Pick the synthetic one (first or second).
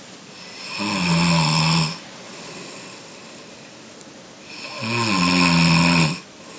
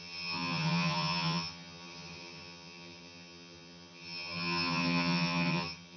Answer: second